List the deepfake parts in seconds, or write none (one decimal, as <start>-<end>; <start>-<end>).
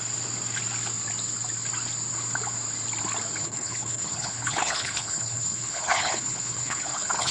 3.4-7.3